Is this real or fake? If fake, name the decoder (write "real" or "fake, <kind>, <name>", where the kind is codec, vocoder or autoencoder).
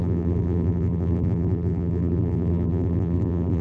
fake, vocoder, BigVGAN v2